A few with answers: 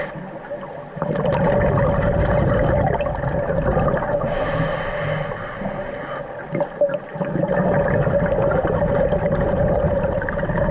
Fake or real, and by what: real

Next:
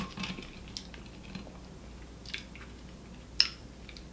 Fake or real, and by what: real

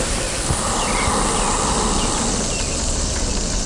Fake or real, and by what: real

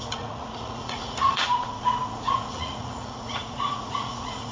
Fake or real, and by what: fake, vocoder, Vocos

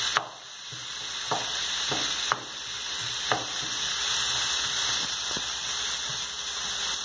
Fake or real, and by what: real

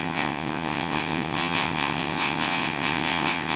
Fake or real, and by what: fake, vocoder, WaveNeXt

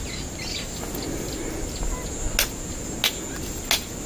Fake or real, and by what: real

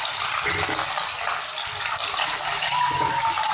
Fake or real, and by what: real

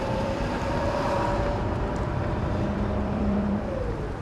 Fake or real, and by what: fake, vocoder, BigVGAN v2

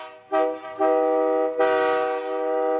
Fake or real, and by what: real